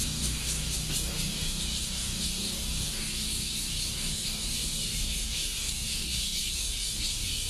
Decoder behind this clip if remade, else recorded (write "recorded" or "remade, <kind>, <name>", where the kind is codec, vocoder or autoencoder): remade, codec, DAC